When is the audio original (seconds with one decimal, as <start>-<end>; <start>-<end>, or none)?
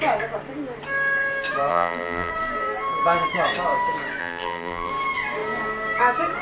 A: 0.0-1.7; 2.3-4.2; 4.9-6.4